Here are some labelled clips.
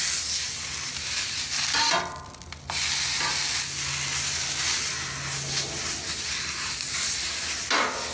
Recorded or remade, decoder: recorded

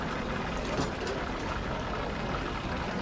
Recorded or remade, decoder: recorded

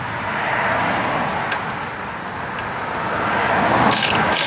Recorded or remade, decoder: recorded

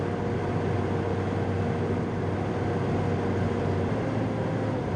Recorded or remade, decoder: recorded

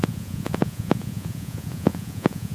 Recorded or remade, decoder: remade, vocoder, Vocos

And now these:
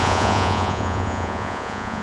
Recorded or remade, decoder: remade, vocoder, Vocos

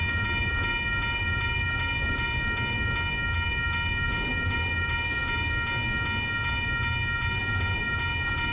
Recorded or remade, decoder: recorded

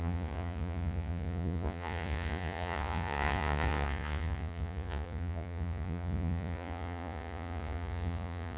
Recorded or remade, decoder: remade, vocoder, Vocos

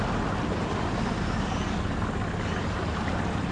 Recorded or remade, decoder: recorded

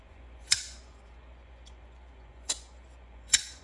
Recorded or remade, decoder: remade, vocoder, Vocos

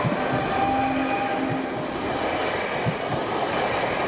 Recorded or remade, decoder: recorded